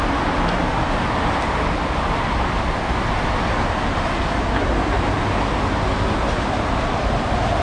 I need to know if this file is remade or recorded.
recorded